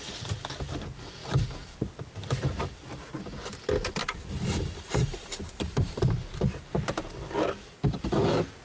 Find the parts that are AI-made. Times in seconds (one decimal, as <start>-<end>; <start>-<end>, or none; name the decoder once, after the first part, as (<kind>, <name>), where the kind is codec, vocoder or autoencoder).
4.0-6.0 (vocoder, BigVGAN v2)